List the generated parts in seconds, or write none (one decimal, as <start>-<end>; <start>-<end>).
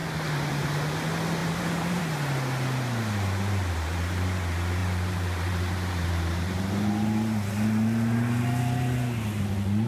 0.0-0.5; 1.4-2.0; 4.8-7.5